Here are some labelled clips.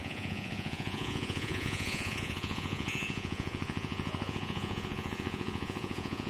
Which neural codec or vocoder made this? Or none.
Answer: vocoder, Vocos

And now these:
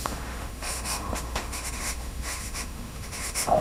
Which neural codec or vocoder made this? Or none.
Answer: autoencoder, DAC-VAE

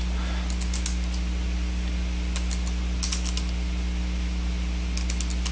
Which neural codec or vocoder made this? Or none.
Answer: none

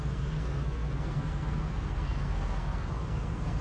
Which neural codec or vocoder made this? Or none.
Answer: codec, SNAC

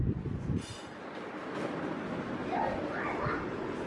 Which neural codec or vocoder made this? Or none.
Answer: none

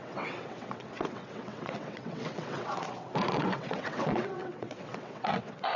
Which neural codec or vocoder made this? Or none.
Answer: vocoder, WaveNeXt